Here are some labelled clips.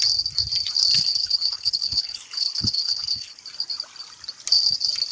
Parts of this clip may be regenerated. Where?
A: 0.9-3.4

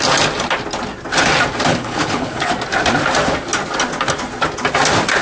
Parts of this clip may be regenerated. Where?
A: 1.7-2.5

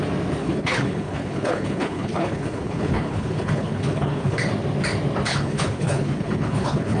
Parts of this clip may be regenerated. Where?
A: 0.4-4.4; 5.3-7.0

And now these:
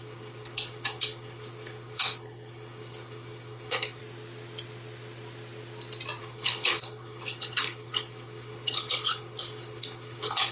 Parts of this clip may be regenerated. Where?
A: 0.0-4.0; 6.2-10.5